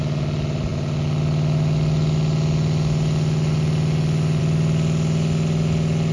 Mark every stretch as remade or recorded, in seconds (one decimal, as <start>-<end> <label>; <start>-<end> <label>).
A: 0.0-6.1 recorded